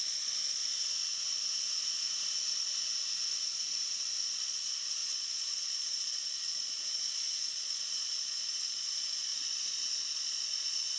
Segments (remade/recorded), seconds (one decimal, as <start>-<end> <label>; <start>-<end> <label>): 0.0-0.6 remade; 0.6-4.3 recorded; 4.3-11.0 remade